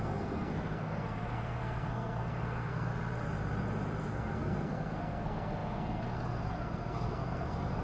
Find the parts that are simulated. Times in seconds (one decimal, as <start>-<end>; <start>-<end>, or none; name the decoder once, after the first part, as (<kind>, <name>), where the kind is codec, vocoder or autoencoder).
0.0-2.9 (codec, SNAC); 4.0-7.8